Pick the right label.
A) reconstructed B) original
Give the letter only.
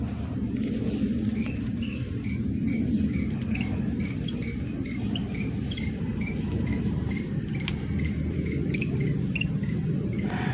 A